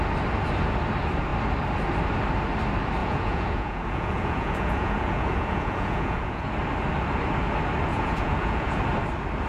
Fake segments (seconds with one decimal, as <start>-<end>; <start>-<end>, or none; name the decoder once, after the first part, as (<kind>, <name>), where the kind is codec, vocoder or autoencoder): 3.0-6.4 (vocoder, Vocos); 7.9-8.8